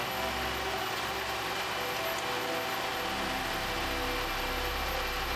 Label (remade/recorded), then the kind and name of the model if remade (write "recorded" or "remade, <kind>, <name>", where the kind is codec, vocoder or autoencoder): recorded